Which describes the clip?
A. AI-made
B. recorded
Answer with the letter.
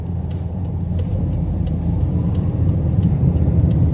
A